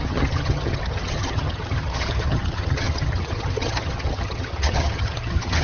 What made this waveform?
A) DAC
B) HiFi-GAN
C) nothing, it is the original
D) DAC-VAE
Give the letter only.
B